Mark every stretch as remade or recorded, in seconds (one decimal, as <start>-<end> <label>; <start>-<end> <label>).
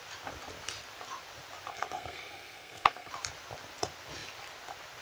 0.0-1.7 recorded; 1.7-3.1 remade; 3.1-5.0 recorded